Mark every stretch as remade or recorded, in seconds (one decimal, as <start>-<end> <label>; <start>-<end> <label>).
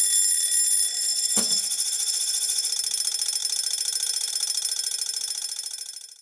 0.0-1.0 recorded; 1.0-2.7 remade; 2.7-6.2 recorded